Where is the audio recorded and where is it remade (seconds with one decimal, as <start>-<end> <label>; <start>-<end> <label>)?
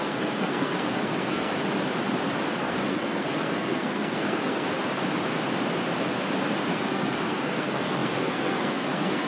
0.0-1.5 remade; 1.5-2.6 recorded; 2.6-4.7 remade; 4.7-6.7 recorded; 6.7-9.3 remade